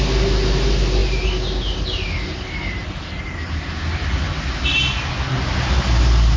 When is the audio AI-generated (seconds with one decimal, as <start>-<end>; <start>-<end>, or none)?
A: none

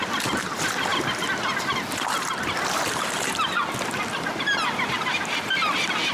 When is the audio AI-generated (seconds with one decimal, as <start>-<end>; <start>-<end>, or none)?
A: 0.0-6.1

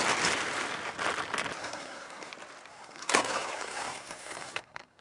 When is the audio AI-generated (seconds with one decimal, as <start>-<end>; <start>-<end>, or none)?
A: 1.6-2.3; 2.7-5.0

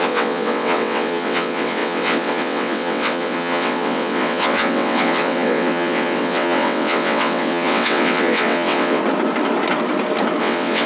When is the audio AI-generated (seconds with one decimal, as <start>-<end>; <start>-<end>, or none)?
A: 0.0-9.0; 10.4-10.9

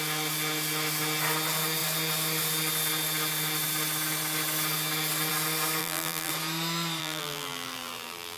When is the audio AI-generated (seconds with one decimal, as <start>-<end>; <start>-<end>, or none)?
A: 5.8-6.3; 7.0-8.4